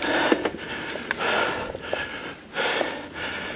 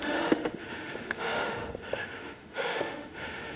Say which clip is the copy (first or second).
second